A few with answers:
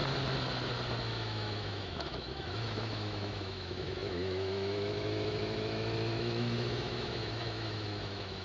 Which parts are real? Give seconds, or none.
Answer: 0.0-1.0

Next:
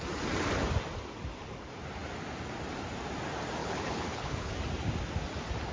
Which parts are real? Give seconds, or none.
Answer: 0.0-3.6; 4.5-5.7

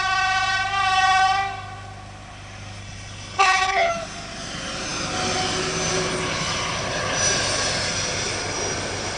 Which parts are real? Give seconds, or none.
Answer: 0.0-2.8; 3.9-9.2

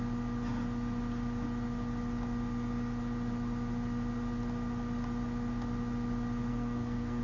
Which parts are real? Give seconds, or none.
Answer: 0.0-6.5

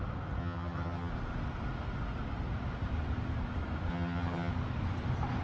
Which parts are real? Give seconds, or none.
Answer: 0.0-0.4; 1.1-3.9; 4.5-5.4

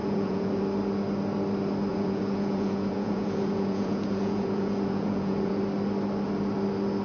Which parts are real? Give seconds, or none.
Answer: 0.6-1.9; 5.6-7.0

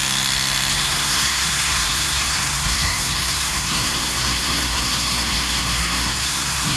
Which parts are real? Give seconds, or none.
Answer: 0.0-0.7